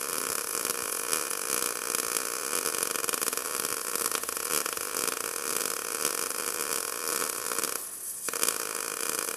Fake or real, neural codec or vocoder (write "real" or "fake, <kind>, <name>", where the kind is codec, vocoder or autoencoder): real